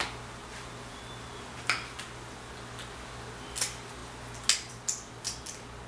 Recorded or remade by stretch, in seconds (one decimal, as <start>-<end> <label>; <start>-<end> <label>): 0.0-5.9 recorded